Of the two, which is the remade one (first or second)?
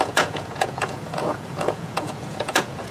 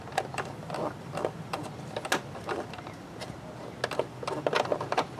first